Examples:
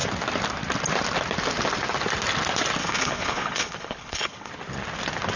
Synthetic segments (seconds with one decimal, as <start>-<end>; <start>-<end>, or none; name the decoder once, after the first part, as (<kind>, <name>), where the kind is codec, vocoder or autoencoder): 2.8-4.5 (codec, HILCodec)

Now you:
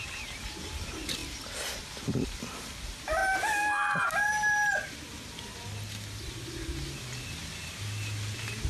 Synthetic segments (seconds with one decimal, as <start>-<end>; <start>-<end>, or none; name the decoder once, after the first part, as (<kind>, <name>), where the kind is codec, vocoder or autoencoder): none

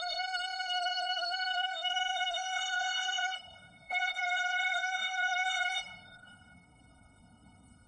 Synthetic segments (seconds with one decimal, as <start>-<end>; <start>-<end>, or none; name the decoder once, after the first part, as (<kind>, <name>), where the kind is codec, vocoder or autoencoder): 0.0-7.9 (codec, SNAC)

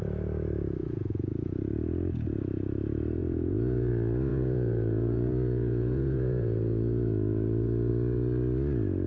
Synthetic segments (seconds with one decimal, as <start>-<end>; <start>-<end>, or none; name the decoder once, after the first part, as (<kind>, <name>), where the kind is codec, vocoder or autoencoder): 0.8-1.5 (vocoder, Vocos); 3.2-3.9; 4.3-7.9

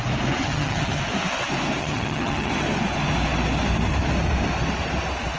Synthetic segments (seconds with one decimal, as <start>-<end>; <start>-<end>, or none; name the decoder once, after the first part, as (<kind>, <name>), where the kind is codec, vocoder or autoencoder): 0.4-1.0 (vocoder, HiFi-GAN); 1.8-2.5

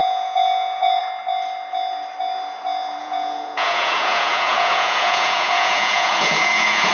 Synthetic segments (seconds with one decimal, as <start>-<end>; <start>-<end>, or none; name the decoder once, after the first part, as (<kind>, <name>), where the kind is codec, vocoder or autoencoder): 0.0-1.0 (vocoder, Vocos); 3.0-6.9

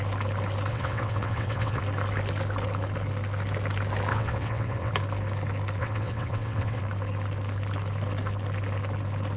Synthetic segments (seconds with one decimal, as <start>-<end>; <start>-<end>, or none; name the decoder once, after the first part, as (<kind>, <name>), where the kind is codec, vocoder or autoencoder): 0.7-1.8 (vocoder, WaveNeXt); 4.1-4.9; 5.8-6.8